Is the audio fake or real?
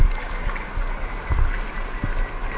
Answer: real